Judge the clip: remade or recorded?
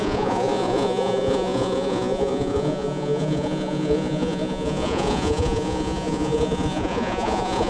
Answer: remade